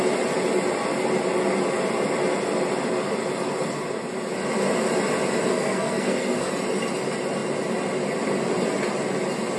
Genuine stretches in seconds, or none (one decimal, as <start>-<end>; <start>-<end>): 0.0-5.5; 6.5-9.6